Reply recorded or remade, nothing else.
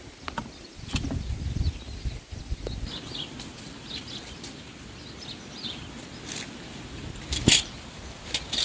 recorded